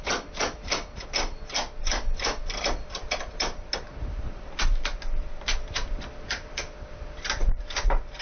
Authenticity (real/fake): real